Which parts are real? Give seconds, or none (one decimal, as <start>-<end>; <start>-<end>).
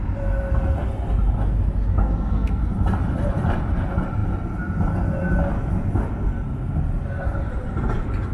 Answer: 0.0-1.9; 2.6-8.3